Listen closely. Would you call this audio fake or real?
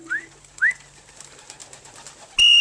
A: real